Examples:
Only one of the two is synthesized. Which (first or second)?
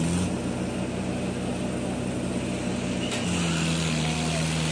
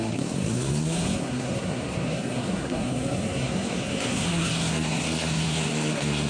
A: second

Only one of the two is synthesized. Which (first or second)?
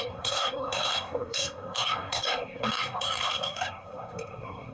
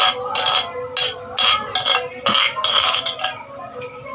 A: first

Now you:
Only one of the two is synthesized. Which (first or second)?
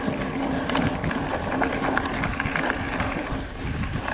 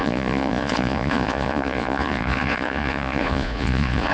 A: second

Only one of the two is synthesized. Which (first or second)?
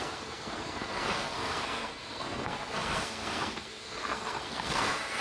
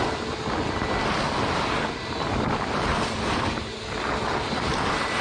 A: first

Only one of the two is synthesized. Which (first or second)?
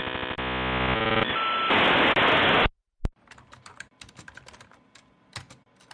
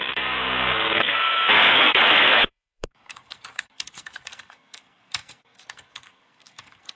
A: second